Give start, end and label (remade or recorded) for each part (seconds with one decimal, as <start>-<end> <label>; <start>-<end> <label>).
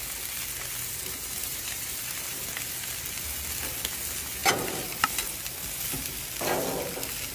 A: 0.0-1.4 recorded; 1.4-2.4 remade; 2.4-7.3 recorded